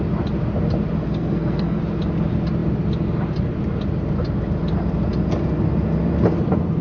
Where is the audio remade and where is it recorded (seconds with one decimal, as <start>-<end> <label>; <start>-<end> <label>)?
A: 0.0-1.0 recorded; 1.0-1.8 remade; 1.8-6.8 recorded